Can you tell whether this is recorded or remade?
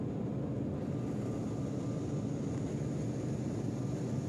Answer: recorded